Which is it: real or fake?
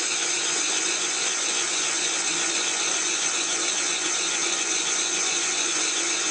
fake